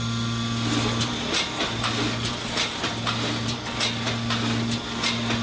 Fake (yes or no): no